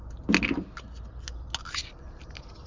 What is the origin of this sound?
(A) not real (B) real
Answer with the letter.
B